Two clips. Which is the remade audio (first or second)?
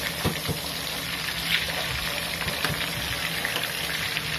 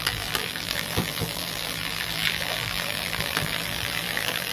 second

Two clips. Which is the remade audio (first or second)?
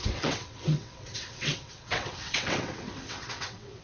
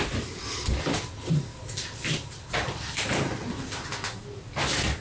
first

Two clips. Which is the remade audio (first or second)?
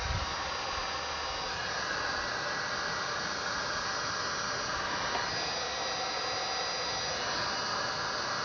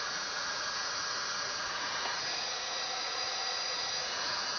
second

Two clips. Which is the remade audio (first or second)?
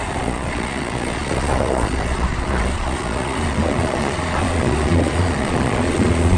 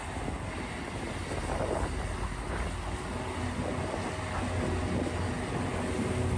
first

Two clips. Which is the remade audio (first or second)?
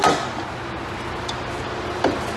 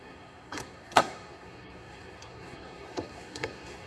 second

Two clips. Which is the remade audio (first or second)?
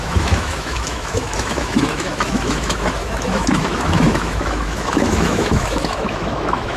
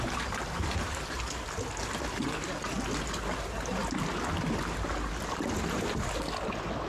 first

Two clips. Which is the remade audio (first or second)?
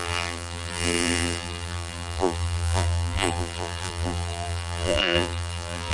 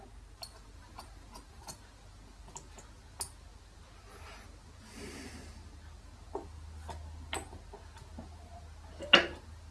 first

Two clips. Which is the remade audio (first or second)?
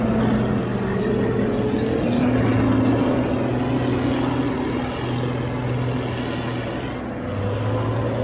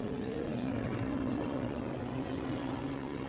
second